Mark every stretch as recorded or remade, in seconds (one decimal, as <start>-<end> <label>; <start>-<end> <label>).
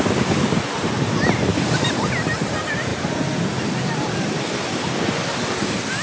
0.0-2.9 recorded; 2.9-4.7 remade; 4.7-6.0 recorded